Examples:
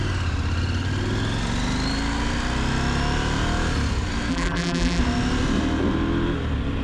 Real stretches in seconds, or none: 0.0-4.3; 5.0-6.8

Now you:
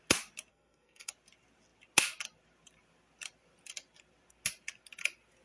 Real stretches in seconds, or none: 0.0-0.5; 1.1-5.4